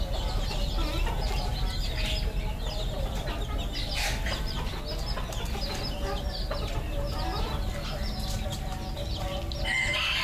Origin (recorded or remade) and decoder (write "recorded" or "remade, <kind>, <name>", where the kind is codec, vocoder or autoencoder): recorded